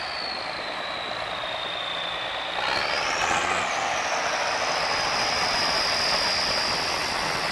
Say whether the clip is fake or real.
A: real